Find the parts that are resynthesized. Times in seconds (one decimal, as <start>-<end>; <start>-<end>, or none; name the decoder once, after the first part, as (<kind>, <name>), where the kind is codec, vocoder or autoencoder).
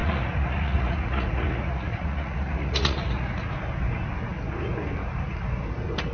0.0-3.5 (vocoder, Vocos)